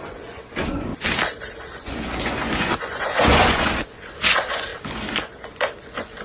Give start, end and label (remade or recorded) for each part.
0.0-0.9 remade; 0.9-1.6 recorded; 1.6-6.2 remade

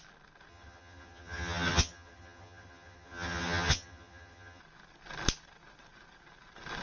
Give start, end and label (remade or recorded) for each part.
0.0-0.5 recorded; 0.5-4.6 remade; 4.6-6.8 recorded

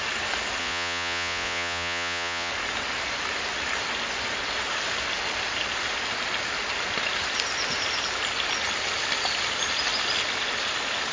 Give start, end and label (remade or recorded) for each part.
0.0-0.6 recorded; 0.6-2.5 remade; 2.5-11.1 recorded

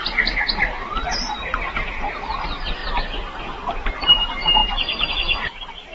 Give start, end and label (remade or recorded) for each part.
0.0-2.8 remade; 2.8-3.4 recorded; 3.4-5.9 remade

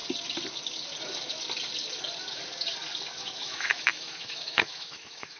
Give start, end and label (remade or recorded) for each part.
0.0-3.2 recorded; 3.2-5.4 remade